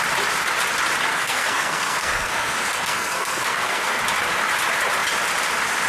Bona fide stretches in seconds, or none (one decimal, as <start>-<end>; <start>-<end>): 0.0-1.1; 4.0-5.9